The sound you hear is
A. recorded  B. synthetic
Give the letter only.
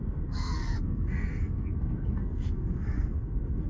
B